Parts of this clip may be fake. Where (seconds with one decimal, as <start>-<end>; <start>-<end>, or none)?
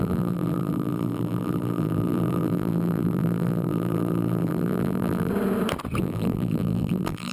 0.0-5.3; 6.0-7.3